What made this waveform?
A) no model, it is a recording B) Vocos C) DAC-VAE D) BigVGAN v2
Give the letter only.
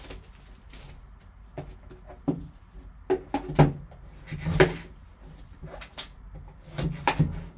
A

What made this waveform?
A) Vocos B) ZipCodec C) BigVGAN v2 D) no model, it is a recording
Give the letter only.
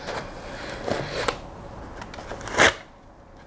D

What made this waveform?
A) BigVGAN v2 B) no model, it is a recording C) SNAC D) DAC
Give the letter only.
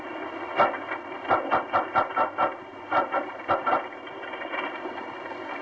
A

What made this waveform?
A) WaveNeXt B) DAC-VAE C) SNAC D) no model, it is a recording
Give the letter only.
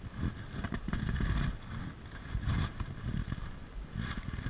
D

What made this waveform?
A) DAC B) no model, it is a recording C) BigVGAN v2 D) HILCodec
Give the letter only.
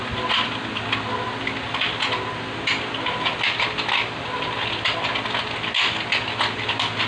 B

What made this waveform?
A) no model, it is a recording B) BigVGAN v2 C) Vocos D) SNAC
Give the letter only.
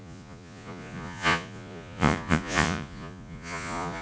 C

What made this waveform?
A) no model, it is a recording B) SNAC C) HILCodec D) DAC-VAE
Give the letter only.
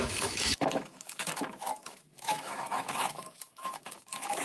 D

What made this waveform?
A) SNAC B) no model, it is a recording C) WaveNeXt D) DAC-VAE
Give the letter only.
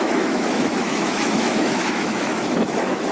D